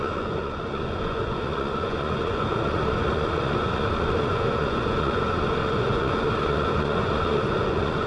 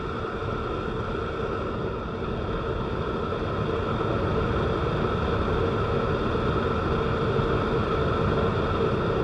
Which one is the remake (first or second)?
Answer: first